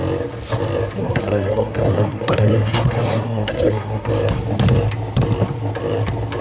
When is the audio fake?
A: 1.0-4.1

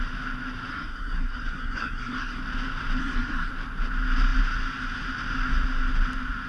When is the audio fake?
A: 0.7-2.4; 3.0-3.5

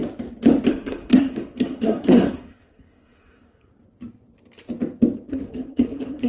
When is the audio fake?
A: 0.7-3.7; 5.3-6.3

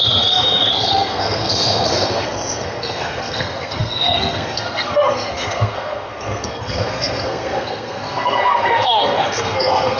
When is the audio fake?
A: 0.0-10.0